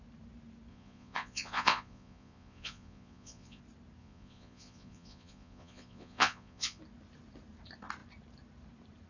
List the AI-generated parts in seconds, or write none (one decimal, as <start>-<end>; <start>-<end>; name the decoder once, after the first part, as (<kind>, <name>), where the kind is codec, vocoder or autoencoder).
0.7-3.6 (vocoder, Vocos); 4.0-6.8